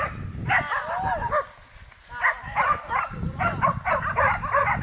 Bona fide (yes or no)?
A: yes